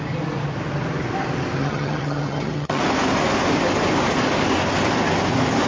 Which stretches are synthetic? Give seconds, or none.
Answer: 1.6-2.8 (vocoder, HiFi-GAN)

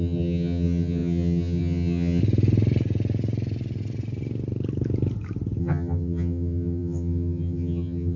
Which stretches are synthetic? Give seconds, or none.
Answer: 0.0-2.2 (vocoder, HiFi-GAN); 5.6-8.2

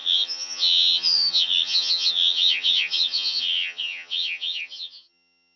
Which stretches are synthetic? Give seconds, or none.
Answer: 0.0-5.6 (vocoder, HiFi-GAN)

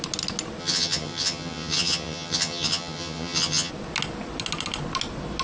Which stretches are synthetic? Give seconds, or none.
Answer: 0.6-3.7 (vocoder, HiFi-GAN)

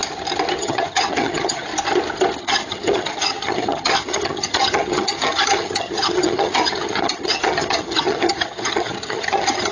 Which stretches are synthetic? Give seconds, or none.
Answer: 0.6-1.7 (vocoder, HiFi-GAN); 2.4-9.7

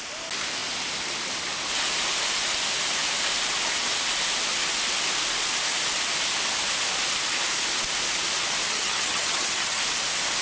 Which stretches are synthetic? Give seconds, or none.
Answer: 8.7-9.8 (vocoder, HiFi-GAN)

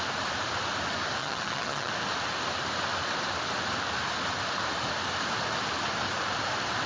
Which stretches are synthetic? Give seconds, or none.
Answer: 1.2-1.9 (vocoder, HiFi-GAN)

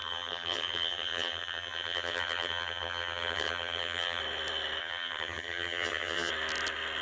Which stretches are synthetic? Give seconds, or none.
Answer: 0.0-4.2 (vocoder, HiFi-GAN); 4.8-6.3